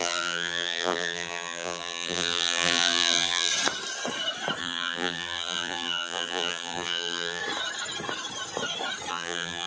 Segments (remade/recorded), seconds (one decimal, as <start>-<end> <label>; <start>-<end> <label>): 0.0-3.5 remade; 3.5-4.6 recorded; 4.6-7.4 remade; 7.4-9.1 recorded; 9.1-9.7 remade